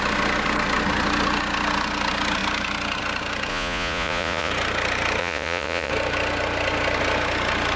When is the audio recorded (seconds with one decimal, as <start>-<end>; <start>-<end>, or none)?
0.0-3.5; 4.5-5.2; 5.9-7.8